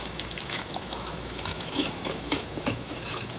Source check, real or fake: fake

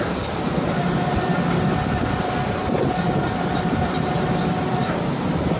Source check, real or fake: real